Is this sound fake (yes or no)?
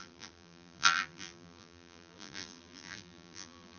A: yes